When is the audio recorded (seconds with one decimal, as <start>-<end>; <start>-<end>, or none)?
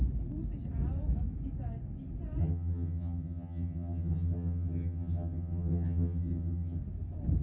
0.0-2.4; 6.8-7.4